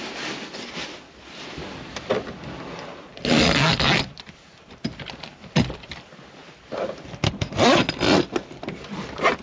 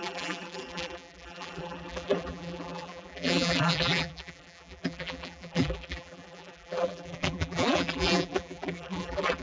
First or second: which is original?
first